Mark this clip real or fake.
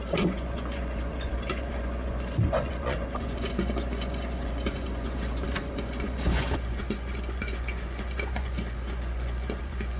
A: fake